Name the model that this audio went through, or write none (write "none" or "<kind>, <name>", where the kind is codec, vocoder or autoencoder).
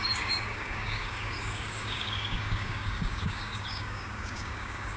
codec, DAC